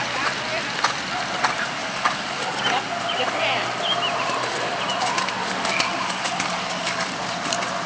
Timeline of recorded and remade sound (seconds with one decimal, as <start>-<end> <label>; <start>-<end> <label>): 0.0-1.8 recorded; 1.8-2.6 remade; 2.6-5.4 recorded; 5.4-7.0 remade; 7.0-7.9 recorded